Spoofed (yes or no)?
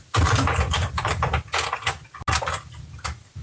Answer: no